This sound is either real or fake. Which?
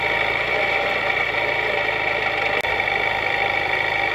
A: real